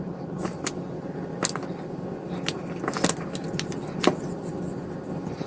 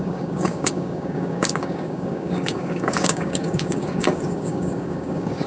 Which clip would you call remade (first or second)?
second